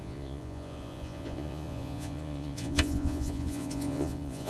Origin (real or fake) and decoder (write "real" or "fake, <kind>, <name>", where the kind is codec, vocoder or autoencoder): fake, vocoder, Vocos